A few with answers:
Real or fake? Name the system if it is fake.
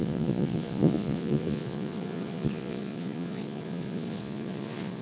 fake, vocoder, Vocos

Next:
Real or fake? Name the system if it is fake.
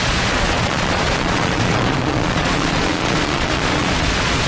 fake, vocoder, Vocos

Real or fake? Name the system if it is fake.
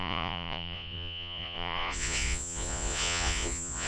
fake, vocoder, Vocos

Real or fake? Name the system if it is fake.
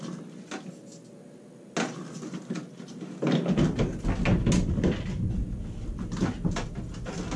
real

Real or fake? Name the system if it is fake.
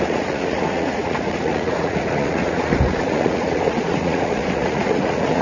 fake, vocoder, Vocos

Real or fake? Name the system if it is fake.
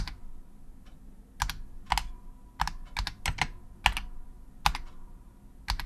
real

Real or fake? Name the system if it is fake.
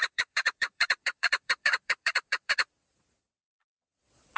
fake, vocoder, Vocos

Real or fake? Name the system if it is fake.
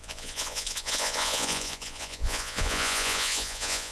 fake, vocoder, Vocos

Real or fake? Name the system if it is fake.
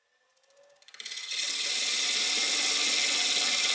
real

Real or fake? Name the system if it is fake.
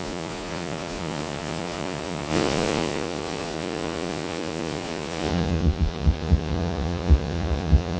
fake, vocoder, Vocos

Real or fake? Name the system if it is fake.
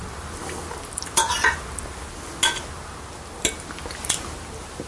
real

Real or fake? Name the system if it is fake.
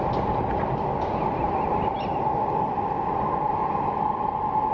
real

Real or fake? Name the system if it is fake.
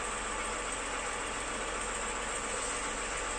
real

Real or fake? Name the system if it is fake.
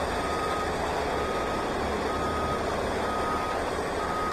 real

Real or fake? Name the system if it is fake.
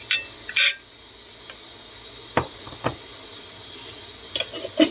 real